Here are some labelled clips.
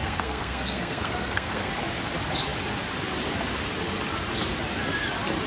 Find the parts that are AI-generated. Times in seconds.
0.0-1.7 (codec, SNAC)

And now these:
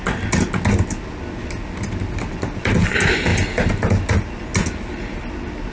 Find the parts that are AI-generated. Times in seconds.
none

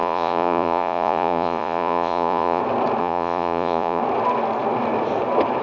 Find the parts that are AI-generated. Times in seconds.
0.0-2.6 (vocoder, Vocos); 3.0-4.0

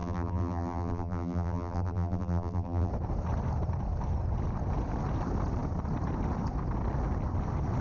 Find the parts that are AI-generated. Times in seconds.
0.0-2.9 (vocoder, BigVGAN v2)

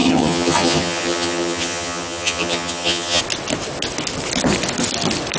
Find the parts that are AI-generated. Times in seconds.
0.0-3.2 (vocoder, HiFi-GAN)